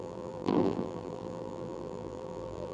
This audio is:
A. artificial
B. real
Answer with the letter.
A